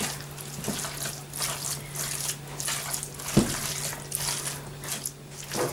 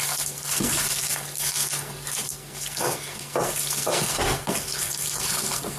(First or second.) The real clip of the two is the first